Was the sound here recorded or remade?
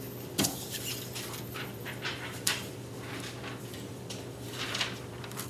remade